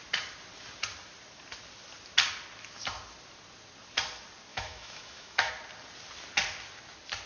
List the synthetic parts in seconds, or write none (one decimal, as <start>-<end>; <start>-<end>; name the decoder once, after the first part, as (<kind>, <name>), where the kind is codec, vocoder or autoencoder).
4.5-5.5 (autoencoder, DAC-VAE)